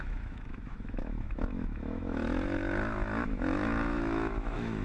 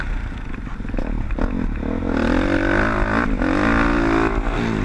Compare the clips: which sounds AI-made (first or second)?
first